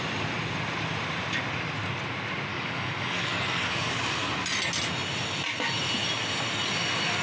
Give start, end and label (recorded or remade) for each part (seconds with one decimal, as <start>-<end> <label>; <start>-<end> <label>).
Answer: 0.0-2.5 recorded; 2.5-4.3 remade; 4.3-7.2 recorded